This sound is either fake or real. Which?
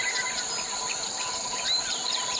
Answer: real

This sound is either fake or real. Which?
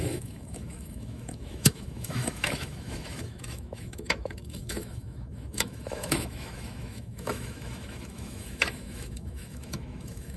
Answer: fake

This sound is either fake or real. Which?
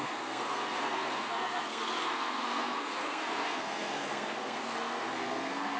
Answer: fake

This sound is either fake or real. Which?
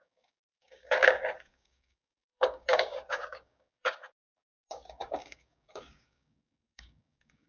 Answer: fake